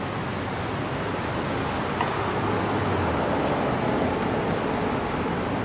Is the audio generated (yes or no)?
no